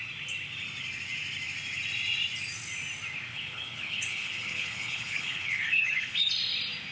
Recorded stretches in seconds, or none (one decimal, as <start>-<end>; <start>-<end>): 0.0-3.3; 6.3-6.9